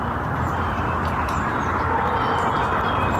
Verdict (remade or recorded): recorded